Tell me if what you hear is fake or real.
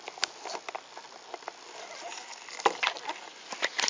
real